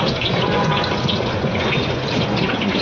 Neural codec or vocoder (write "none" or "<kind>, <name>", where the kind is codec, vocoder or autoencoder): vocoder, Vocos